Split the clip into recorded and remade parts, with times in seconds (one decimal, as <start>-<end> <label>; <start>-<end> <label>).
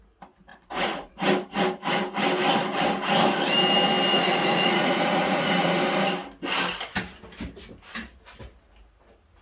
0.0-0.5 recorded; 0.5-1.1 remade; 1.1-4.1 recorded; 4.1-5.8 remade; 5.8-9.4 recorded